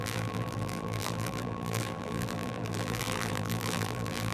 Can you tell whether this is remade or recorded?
remade